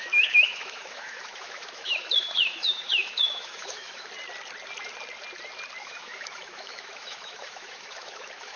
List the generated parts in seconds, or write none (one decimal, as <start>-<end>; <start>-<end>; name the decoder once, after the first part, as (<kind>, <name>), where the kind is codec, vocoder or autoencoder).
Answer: 0.0-4.1 (autoencoder, DAC-VAE); 5.8-8.6